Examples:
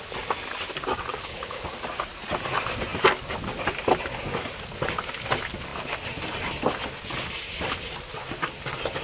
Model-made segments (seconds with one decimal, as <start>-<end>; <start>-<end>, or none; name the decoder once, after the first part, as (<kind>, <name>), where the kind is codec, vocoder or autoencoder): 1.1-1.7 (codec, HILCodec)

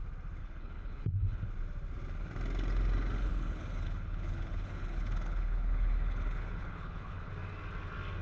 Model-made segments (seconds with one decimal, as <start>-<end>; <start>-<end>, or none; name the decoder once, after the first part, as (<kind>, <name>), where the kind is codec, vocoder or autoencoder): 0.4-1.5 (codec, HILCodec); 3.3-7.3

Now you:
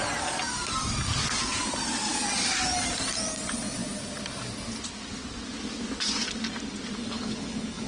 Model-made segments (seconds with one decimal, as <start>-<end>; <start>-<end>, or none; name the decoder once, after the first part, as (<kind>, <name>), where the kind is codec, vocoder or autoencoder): 7.0-7.9 (codec, HILCodec)